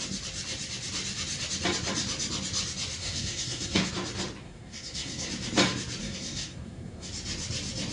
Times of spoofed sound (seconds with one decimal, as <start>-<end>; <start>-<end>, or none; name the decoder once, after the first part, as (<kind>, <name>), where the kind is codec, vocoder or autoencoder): 3.0-3.9 (codec, SNAC); 4.4-5.3; 6.0-7.1